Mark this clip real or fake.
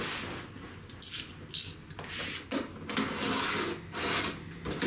real